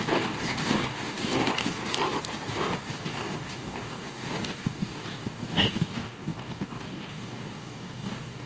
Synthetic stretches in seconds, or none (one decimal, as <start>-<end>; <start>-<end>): 0.0-1.8; 2.5-8.5